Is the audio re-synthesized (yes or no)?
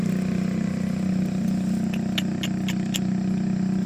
no